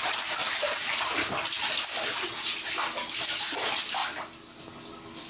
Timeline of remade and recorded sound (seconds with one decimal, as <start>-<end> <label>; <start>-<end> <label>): 0.0-5.3 recorded

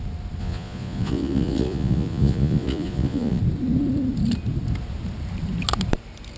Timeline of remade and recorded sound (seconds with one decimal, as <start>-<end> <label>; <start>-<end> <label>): 0.0-0.4 recorded; 0.4-3.4 remade; 3.4-6.4 recorded

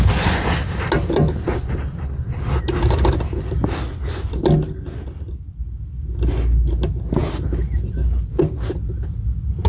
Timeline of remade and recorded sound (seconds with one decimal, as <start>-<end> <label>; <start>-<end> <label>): 0.0-9.7 recorded

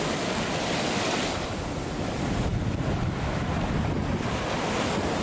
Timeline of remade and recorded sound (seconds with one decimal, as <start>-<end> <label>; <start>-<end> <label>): 0.0-5.2 recorded

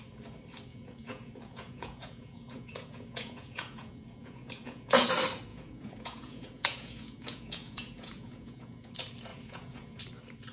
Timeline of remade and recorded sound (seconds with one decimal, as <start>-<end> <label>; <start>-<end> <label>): 0.0-0.7 recorded; 0.7-5.1 remade; 5.1-5.5 recorded; 5.5-8.9 remade; 8.9-9.3 recorded; 9.3-10.0 remade; 10.0-10.5 recorded

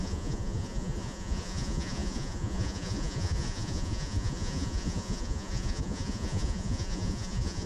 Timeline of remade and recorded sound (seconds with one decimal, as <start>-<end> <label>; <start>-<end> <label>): 0.0-7.7 remade